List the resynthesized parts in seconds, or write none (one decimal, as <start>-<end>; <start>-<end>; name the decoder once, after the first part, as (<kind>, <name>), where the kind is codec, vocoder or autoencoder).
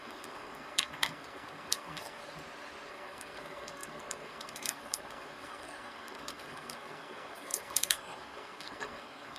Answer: 0.0-2.2 (codec, SNAC); 2.9-9.4